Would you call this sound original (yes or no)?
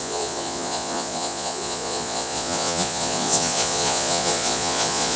no